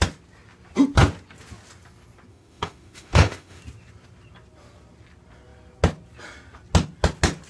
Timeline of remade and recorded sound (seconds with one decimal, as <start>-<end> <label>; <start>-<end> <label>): 0.0-2.3 recorded; 2.3-3.6 remade; 3.6-7.5 recorded